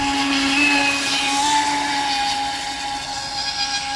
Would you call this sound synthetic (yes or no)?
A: no